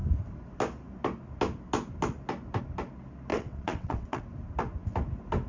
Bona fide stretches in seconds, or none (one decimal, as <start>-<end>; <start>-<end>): 0.0-3.3; 4.2-5.5